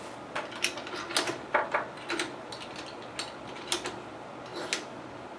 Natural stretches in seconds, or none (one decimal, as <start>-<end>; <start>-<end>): 0.0-5.4